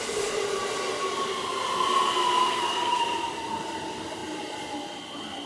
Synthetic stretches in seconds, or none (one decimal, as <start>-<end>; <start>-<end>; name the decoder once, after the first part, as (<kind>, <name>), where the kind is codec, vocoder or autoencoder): 2.4-3.0 (codec, SNAC)